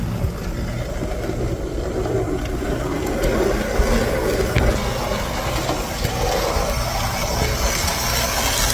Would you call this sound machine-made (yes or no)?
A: no